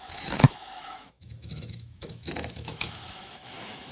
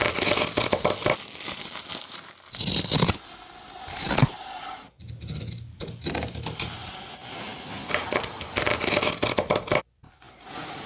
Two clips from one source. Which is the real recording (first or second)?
second